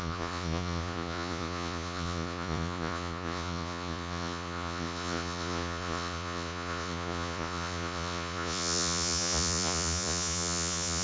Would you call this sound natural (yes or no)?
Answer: no